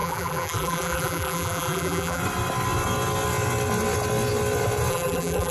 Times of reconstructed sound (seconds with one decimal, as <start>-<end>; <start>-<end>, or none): 0.0-2.2; 4.9-5.5